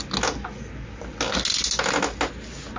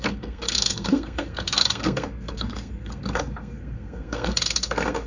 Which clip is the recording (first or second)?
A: first